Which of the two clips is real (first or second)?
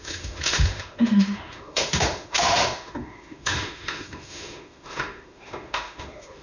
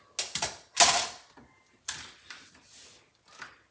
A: second